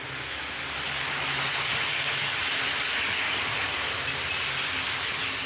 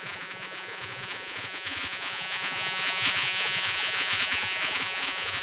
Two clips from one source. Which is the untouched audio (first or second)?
first